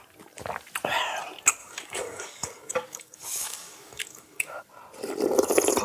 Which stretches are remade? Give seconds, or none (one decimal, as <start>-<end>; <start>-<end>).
1.6-4.6